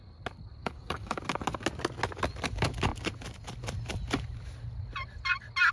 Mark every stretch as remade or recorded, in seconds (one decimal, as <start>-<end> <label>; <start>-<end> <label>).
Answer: 0.0-0.6 recorded; 0.6-1.2 remade; 1.2-5.7 recorded